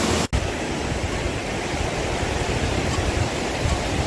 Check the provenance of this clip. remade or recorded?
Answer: recorded